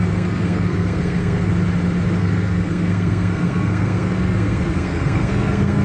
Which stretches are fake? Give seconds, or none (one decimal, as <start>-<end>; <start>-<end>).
0.0-1.5; 2.2-5.8